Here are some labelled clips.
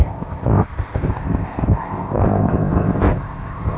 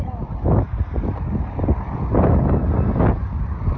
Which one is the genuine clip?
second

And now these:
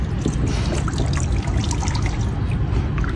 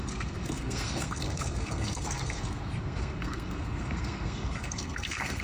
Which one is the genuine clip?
first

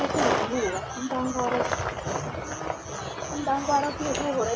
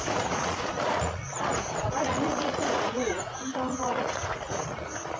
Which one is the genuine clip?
first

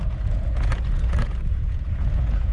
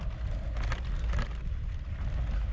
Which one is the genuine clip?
second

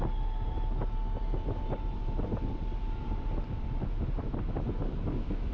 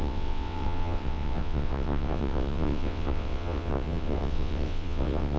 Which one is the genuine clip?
first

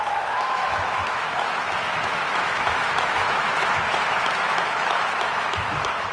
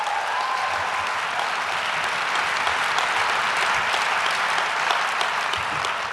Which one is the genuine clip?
second